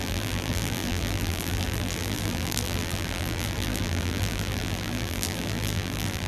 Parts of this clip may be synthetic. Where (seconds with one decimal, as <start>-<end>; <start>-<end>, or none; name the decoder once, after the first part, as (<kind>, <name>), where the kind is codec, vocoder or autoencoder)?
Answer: 0.0-6.3 (vocoder, BigVGAN v2)